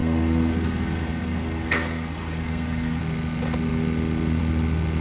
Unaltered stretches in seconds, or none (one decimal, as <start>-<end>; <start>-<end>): 3.0-5.0